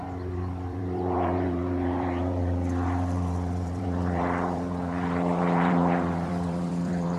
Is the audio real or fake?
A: fake